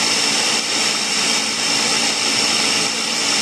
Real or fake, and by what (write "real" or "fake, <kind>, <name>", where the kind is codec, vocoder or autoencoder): fake, vocoder, BigVGAN v2